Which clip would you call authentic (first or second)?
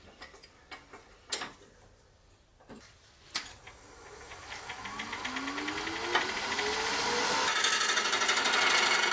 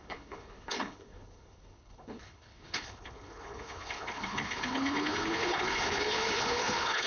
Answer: first